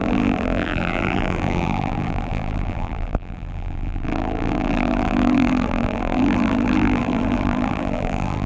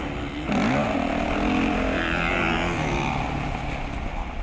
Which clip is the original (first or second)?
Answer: second